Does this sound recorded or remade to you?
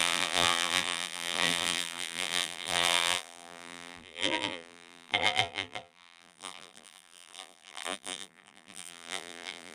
remade